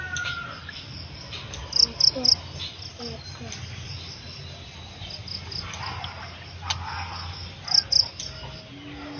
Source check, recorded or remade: recorded